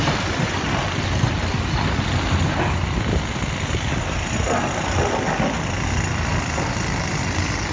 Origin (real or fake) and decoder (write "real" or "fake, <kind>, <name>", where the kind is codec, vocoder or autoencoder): real